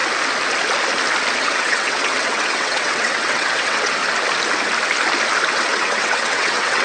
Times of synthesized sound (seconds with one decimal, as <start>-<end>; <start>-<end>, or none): 1.4-4.0; 5.5-6.8